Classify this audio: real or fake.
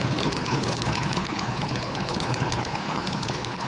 fake